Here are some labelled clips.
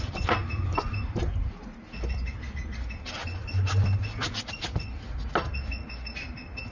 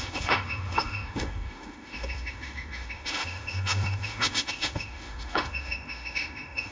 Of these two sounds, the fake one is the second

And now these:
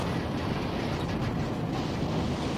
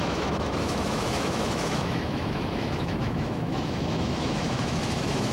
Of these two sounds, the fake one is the second